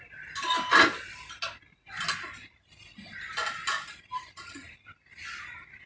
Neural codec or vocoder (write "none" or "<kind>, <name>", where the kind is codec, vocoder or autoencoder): none